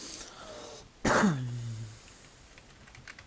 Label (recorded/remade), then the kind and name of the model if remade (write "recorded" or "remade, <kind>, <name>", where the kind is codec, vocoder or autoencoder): recorded